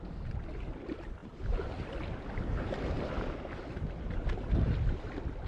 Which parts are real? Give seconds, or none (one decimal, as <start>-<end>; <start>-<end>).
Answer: 0.0-5.5